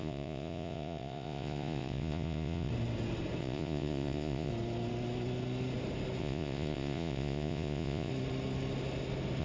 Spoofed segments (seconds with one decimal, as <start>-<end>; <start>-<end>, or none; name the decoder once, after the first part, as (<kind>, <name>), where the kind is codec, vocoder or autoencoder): 0.0-2.7 (vocoder, Vocos); 3.4-4.5; 6.2-8.1